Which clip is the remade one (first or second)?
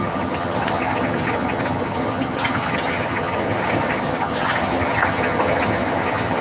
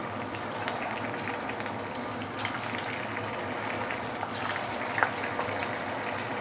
first